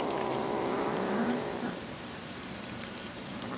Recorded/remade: remade